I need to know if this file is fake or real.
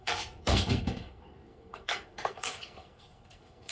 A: fake